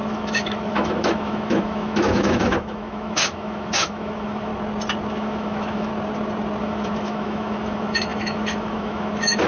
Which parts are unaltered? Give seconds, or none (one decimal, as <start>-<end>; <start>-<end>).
4.5-5.1; 5.9-6.6